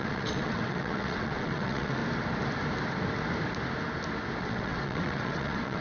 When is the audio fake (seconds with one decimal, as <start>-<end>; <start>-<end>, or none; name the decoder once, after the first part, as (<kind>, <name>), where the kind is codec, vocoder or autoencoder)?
0.0-2.0 (vocoder, WaveNeXt); 4.4-5.8